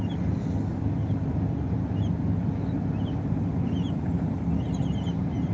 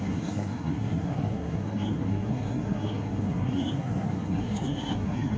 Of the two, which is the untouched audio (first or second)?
first